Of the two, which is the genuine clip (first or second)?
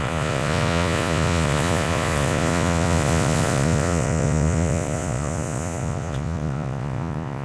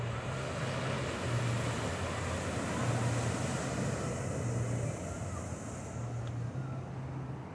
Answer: second